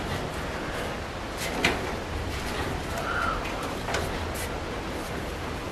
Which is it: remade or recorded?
recorded